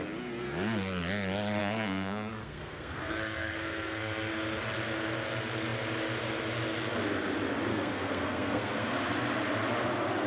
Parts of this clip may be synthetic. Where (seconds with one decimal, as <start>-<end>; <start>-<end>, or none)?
1.6-4.3; 7.7-8.9